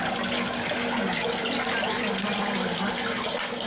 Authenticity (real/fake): real